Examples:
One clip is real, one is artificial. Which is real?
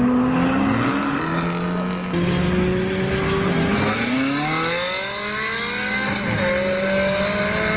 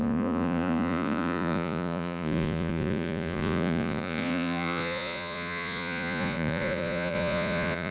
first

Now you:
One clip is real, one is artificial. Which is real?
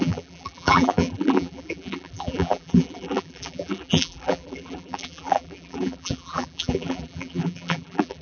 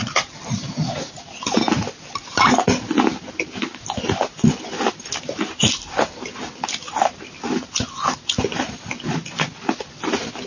second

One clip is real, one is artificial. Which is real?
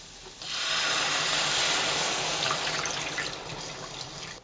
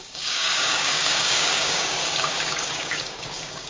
first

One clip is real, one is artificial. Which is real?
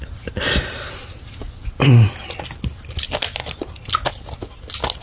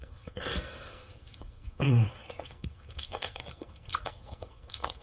first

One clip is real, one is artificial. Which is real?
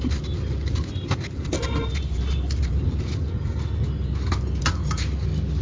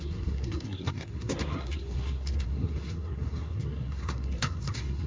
first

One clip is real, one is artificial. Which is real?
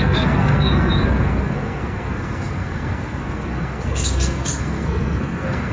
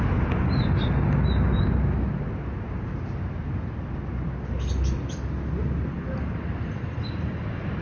second